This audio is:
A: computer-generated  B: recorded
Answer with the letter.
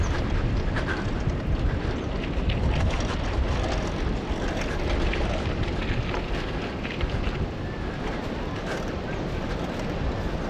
B